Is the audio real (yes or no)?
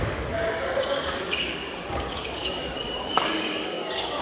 no